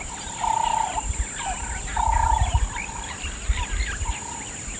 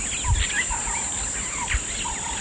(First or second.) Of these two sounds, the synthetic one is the first